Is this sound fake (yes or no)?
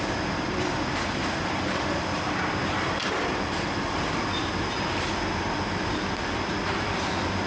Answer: yes